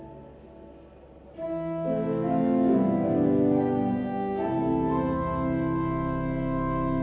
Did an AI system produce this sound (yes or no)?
no